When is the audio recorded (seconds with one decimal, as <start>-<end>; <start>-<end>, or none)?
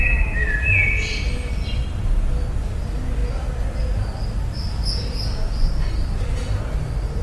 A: 0.0-7.2